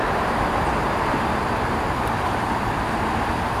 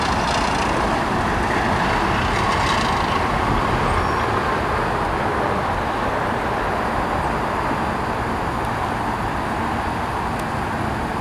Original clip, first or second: second